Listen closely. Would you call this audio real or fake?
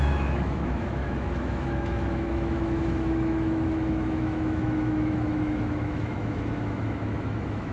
fake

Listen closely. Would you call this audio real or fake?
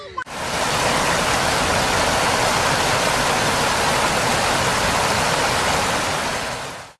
real